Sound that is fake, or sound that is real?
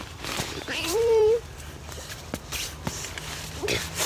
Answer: fake